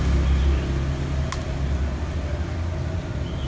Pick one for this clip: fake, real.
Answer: real